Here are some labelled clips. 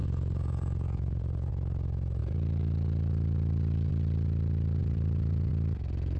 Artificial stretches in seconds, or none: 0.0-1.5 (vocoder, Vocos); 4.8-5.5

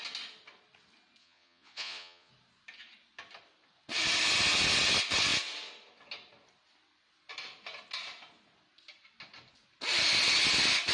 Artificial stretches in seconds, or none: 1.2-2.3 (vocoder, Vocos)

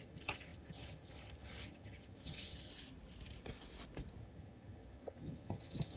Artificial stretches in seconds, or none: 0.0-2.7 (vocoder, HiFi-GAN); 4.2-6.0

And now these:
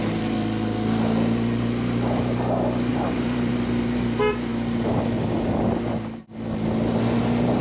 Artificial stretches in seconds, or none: 2.9-3.5 (vocoder, BigVGAN v2)

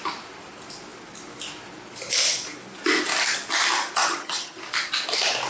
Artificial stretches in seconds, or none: 4.0-4.6 (vocoder, HiFi-GAN)

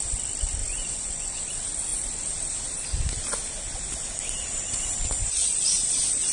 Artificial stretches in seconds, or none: 0.6-1.4 (vocoder, Vocos)